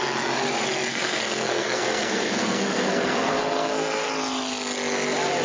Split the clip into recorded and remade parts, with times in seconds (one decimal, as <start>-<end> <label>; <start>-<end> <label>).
0.0-0.9 recorded; 0.9-4.1 remade; 4.1-5.4 recorded